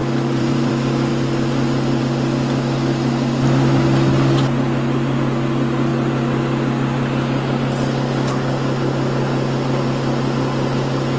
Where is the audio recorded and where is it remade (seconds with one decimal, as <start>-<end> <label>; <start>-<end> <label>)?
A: 0.0-0.7 remade; 0.7-11.2 recorded